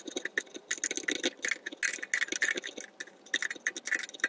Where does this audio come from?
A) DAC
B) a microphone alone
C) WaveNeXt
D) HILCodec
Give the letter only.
B